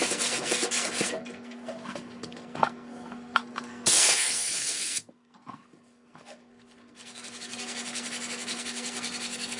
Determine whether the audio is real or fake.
fake